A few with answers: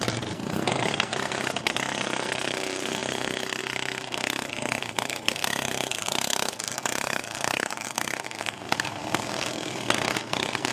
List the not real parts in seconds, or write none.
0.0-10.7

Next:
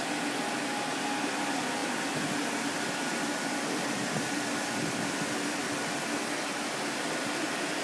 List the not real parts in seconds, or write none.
none

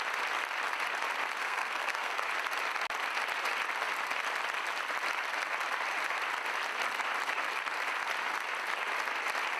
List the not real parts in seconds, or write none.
1.4-2.2

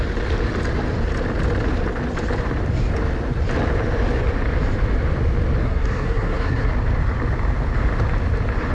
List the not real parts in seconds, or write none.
5.6-6.7

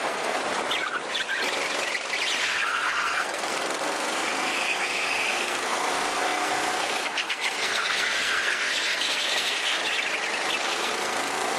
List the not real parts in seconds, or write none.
0.0-0.4; 2.4-9.8; 10.6-11.6

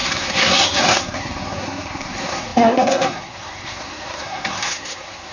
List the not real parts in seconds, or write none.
0.0-5.3

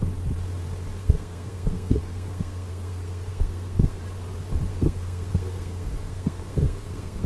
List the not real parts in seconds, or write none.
1.0-4.0; 4.7-7.3